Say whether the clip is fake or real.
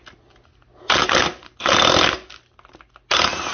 real